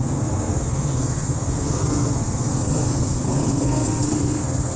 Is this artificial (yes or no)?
yes